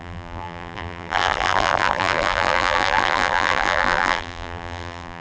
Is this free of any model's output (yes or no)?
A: no